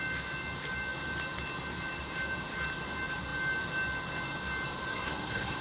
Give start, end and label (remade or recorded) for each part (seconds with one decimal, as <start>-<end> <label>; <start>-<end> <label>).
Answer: 0.0-4.9 recorded; 4.9-5.6 remade